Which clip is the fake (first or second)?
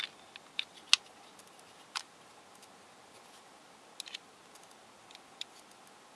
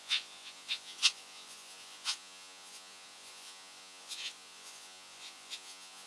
second